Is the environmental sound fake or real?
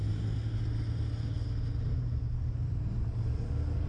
real